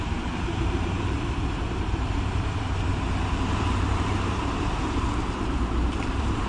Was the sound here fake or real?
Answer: fake